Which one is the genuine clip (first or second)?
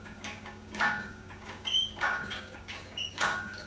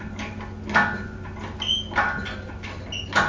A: second